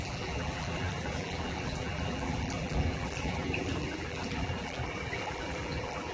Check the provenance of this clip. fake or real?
fake